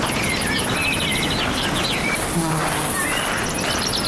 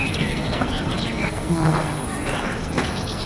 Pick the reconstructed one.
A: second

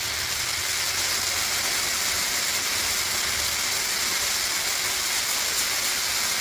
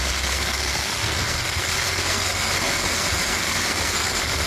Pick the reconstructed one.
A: second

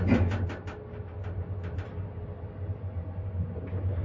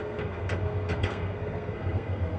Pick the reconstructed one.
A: second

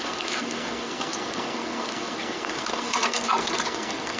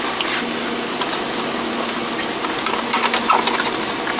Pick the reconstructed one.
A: first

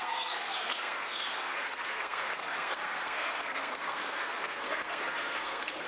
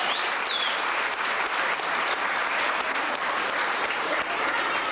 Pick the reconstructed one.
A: first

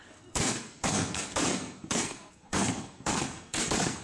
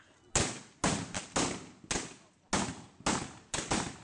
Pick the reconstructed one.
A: first